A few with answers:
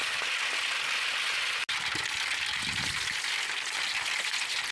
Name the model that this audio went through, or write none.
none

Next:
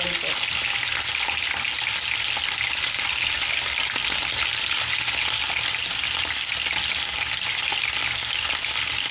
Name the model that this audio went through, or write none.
none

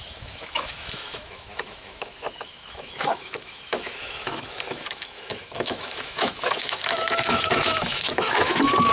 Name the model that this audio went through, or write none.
autoencoder, DAC-VAE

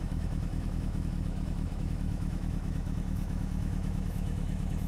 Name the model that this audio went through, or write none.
autoencoder, DAC-VAE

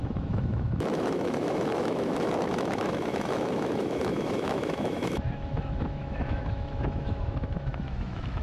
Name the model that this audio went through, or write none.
autoencoder, DAC-VAE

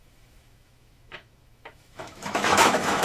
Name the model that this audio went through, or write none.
autoencoder, DAC-VAE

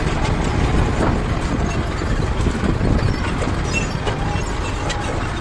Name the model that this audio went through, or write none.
none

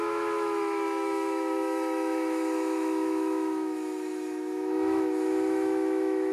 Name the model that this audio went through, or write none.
autoencoder, DAC-VAE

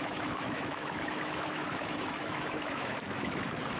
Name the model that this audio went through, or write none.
autoencoder, DAC-VAE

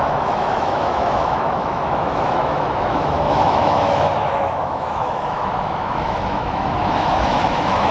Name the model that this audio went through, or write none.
autoencoder, DAC-VAE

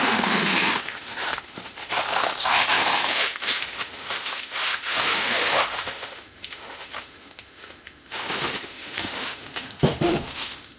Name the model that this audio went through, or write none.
autoencoder, DAC-VAE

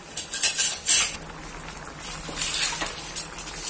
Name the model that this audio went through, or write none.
none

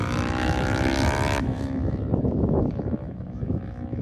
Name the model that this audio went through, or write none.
autoencoder, DAC-VAE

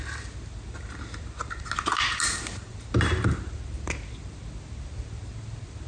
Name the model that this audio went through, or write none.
none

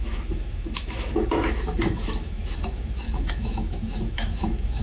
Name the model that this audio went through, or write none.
autoencoder, DAC-VAE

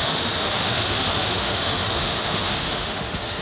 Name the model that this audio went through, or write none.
autoencoder, DAC-VAE